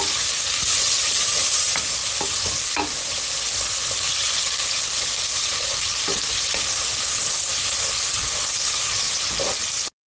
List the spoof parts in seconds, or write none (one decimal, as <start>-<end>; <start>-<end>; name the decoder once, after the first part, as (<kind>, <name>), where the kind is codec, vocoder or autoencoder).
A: none